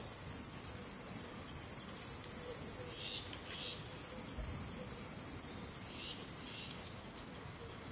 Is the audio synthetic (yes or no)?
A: no